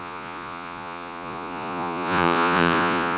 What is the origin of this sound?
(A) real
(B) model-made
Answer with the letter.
B